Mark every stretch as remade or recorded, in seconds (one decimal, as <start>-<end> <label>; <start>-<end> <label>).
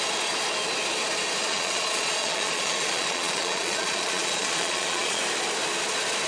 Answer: 0.0-1.4 recorded; 1.4-5.2 remade; 5.2-6.3 recorded